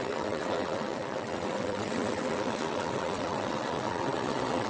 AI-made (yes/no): yes